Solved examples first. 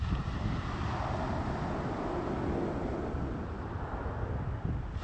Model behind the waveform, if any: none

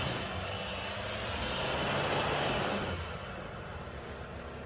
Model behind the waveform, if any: none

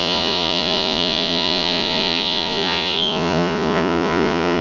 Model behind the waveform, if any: vocoder, Vocos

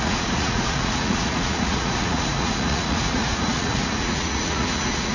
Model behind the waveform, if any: vocoder, Vocos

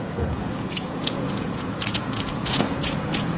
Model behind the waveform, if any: vocoder, Vocos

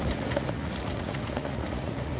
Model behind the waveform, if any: vocoder, Vocos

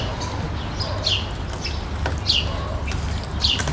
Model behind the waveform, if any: none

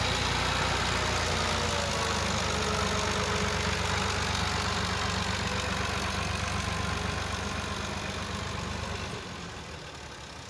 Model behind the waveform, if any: none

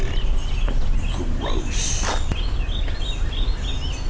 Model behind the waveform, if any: none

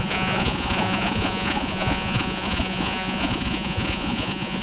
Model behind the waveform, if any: vocoder, Vocos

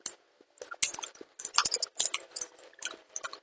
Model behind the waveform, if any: none